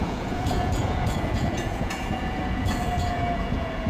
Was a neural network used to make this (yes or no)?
yes